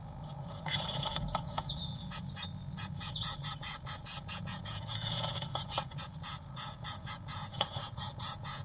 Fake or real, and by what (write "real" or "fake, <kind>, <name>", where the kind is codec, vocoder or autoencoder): fake, vocoder, Vocos